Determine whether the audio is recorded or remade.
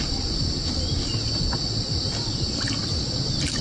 recorded